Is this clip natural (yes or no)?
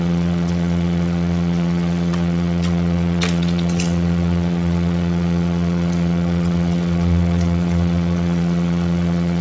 no